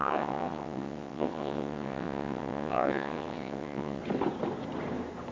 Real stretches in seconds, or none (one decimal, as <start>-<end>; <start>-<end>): 4.0-5.3